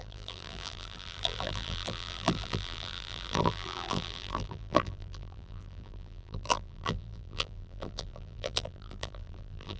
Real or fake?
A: fake